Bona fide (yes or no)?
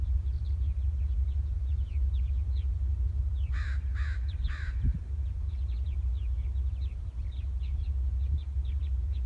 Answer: no